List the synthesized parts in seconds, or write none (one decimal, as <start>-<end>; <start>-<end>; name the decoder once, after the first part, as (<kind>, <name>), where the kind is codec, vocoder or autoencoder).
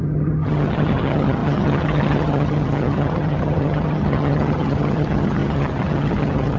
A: 0.0-6.6 (vocoder, HiFi-GAN)